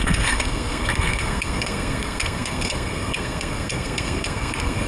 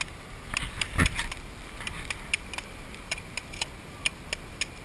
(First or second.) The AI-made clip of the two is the first